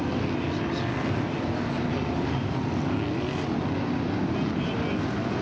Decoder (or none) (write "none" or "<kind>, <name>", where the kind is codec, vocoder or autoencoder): none